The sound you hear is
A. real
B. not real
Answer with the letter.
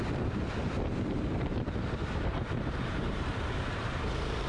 B